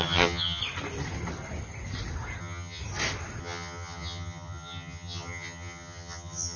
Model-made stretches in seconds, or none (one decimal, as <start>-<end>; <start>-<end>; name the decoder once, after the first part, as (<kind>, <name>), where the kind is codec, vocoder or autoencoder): 0.0-0.6 (vocoder, HiFi-GAN); 2.4-2.8; 3.4-6.6